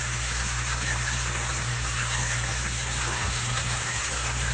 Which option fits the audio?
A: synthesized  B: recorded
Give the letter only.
A